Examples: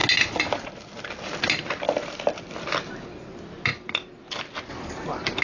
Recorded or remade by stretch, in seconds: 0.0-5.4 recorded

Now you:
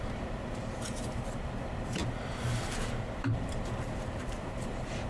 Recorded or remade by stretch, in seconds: 0.0-5.1 remade

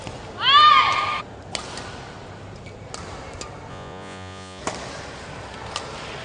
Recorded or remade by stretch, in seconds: 0.0-3.7 recorded; 3.7-4.6 remade; 4.6-6.2 recorded

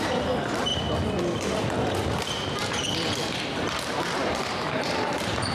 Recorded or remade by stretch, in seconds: 0.0-0.7 remade; 0.7-4.0 recorded; 4.0-5.5 remade

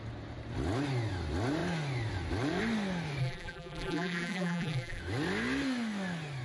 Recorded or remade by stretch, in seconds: 0.0-3.2 recorded; 3.2-5.0 remade; 5.0-6.4 recorded

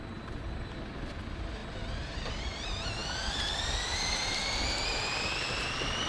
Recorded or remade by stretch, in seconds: 0.0-6.1 recorded

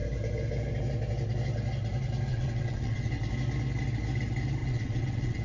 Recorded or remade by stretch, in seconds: 0.0-2.3 recorded; 2.3-3.2 remade; 3.2-4.6 recorded; 4.6-5.4 remade